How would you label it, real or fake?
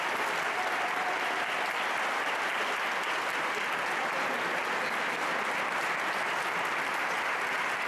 real